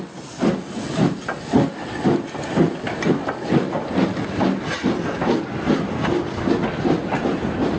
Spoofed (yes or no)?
no